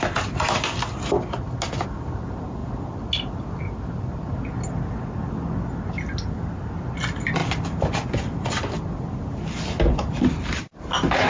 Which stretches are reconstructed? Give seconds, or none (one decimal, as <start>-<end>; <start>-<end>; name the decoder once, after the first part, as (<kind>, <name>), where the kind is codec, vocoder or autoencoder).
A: none